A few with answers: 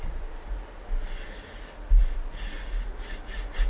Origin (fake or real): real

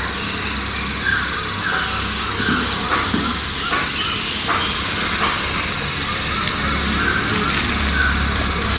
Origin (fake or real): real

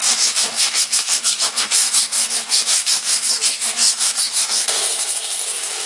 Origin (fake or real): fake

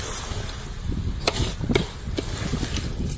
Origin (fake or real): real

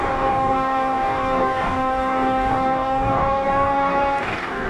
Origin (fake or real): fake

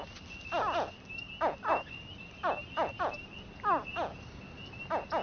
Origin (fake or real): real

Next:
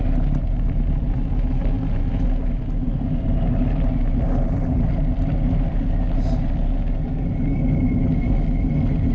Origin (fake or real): real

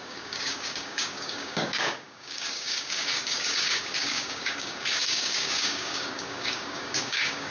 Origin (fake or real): fake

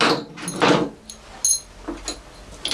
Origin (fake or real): real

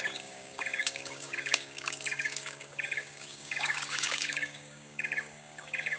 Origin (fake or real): fake